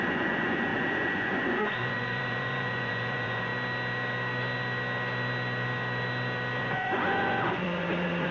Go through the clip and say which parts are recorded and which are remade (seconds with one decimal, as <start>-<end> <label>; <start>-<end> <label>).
0.0-3.5 remade; 3.5-6.6 recorded; 6.6-8.3 remade